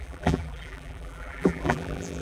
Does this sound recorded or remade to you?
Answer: remade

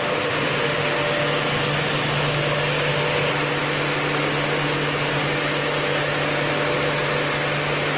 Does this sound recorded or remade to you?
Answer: recorded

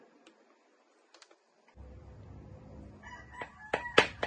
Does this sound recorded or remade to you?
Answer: recorded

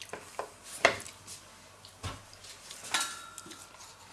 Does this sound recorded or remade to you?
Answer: recorded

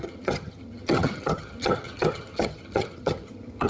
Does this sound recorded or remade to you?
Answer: remade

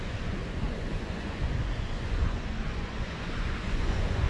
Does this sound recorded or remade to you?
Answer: remade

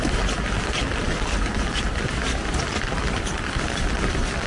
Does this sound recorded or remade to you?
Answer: recorded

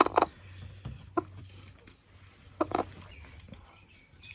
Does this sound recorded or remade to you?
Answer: recorded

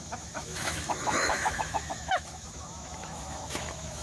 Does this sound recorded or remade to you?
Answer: remade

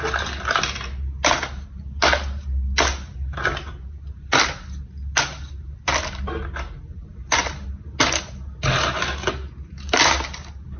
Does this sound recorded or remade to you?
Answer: recorded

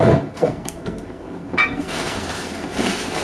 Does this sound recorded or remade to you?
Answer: remade